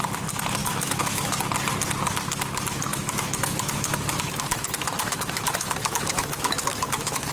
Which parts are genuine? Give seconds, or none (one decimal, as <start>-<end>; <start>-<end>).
0.0-0.6; 1.4-2.9